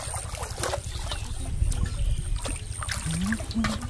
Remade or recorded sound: recorded